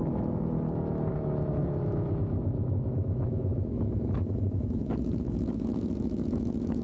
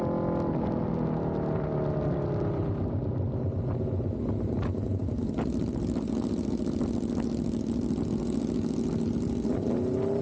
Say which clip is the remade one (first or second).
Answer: first